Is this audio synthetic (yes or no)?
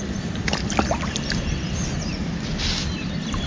no